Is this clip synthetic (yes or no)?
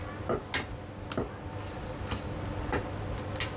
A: no